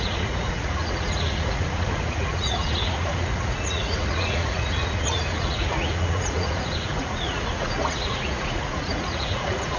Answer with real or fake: fake